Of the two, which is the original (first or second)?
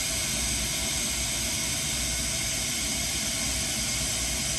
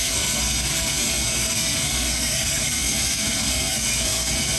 first